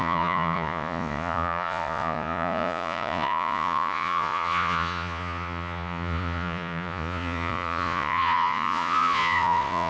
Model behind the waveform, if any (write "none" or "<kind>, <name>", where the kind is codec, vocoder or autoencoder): vocoder, Vocos